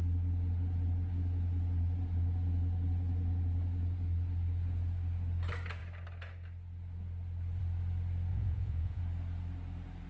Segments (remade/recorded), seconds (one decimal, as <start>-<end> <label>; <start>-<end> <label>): 0.0-8.3 recorded; 8.3-9.0 remade; 9.0-10.1 recorded